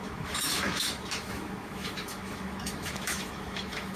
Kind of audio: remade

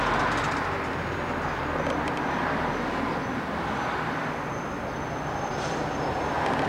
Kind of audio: recorded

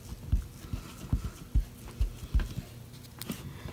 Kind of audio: recorded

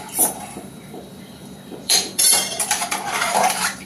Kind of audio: remade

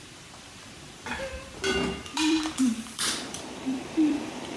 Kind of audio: remade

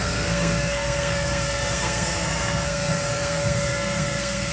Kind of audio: remade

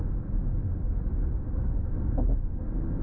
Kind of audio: recorded